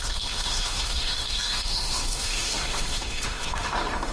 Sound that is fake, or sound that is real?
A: fake